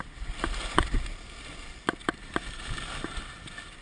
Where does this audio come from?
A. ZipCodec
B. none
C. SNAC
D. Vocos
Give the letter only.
B